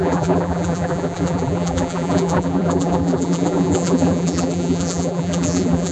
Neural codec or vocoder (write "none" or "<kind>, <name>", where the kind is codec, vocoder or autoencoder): vocoder, BigVGAN v2